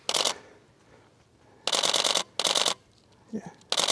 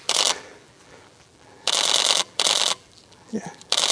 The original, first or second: first